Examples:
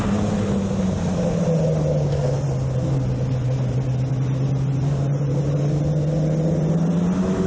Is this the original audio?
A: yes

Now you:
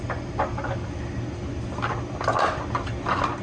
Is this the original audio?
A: yes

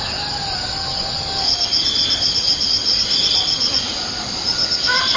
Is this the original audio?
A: yes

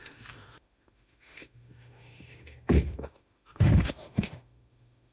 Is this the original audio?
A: no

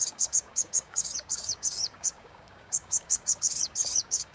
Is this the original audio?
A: no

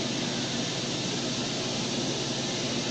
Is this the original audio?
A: yes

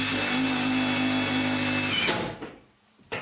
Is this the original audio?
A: yes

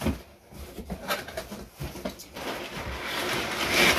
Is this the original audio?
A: yes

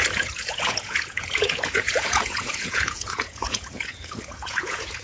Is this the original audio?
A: no